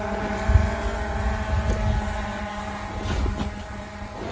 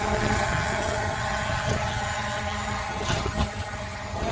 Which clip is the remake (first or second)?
second